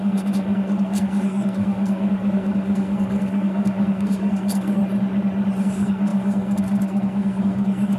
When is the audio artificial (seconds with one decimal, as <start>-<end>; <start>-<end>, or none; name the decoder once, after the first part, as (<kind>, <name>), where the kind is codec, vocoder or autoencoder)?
0.0-4.8 (codec, SNAC); 5.6-8.0